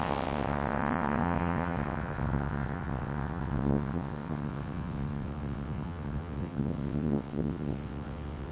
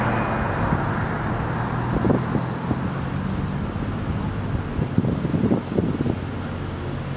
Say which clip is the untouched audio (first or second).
second